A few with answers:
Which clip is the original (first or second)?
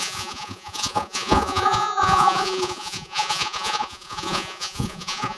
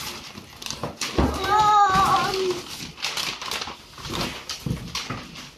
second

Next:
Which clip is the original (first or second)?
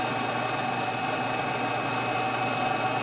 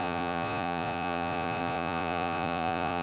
first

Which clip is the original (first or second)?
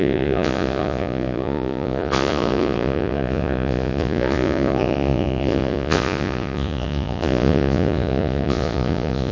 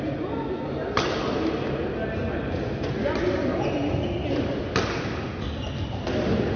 second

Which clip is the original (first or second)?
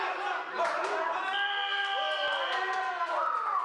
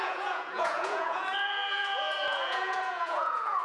first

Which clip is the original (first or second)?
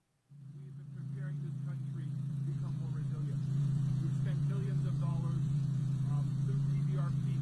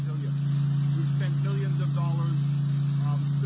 second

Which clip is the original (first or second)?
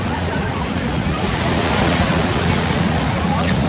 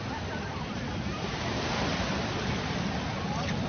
second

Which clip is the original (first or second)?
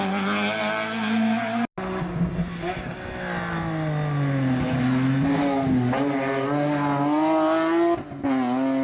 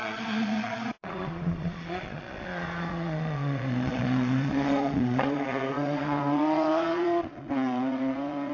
first